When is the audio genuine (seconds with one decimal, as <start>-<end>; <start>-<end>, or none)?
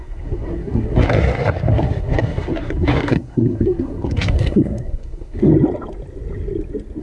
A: 5.5-7.0